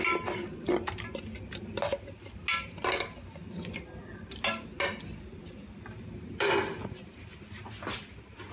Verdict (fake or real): real